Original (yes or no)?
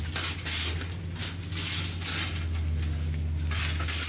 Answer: yes